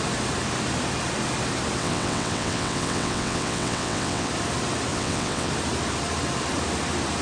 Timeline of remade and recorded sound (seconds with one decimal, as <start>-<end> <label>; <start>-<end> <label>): 0.0-1.8 recorded; 1.8-4.3 remade; 4.3-4.9 recorded; 4.9-5.5 remade; 5.5-7.2 recorded